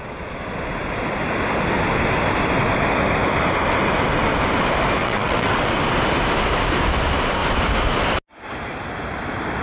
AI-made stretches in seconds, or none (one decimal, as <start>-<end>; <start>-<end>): 5.0-5.8